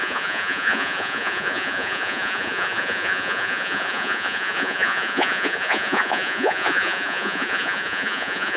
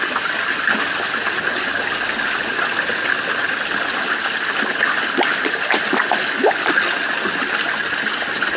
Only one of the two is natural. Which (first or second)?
second